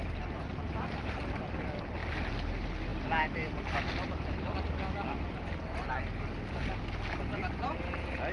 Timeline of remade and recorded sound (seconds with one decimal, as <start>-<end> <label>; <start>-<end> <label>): 0.0-8.3 recorded